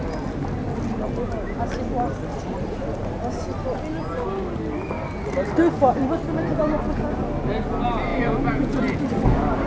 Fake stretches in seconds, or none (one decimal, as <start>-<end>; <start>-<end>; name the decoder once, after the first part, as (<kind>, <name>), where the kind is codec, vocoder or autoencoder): 8.1-9.0 (vocoder, Vocos)